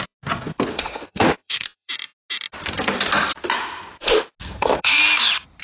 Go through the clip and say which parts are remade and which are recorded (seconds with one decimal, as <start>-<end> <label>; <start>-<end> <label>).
0.0-0.7 recorded; 0.7-1.9 remade; 1.9-4.4 recorded; 4.4-5.0 remade; 5.0-5.6 recorded